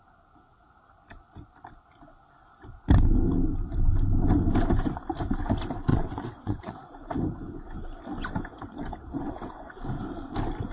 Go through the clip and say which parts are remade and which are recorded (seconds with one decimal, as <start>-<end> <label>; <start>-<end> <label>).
0.0-5.9 recorded; 5.9-6.8 remade; 6.8-8.5 recorded; 8.5-9.7 remade; 9.7-10.7 recorded